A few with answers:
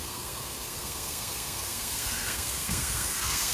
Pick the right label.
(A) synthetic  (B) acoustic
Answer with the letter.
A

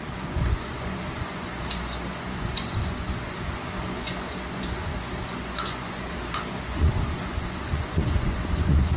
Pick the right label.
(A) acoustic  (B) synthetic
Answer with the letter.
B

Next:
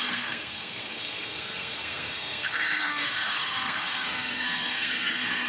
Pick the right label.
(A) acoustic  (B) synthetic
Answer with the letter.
B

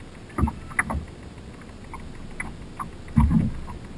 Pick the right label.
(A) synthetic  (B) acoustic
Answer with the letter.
B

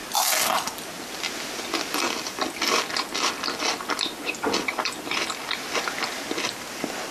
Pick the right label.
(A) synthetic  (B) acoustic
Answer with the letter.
B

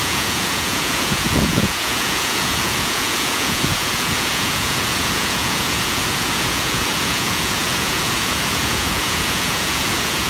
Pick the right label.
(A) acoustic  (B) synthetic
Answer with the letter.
B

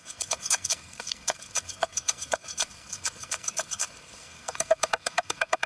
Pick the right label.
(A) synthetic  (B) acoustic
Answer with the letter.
A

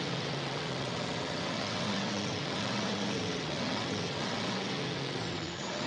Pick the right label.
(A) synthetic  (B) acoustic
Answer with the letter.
A